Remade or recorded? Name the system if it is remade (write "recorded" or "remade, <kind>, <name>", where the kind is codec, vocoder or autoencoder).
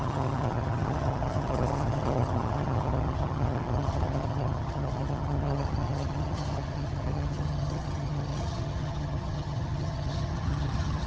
remade, vocoder, HiFi-GAN